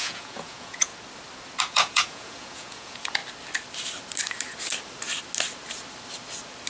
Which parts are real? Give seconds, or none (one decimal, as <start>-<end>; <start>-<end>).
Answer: 0.9-1.6; 3.2-6.7